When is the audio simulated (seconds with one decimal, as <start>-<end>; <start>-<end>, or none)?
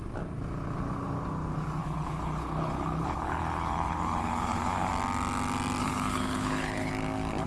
1.8-4.9; 5.8-6.9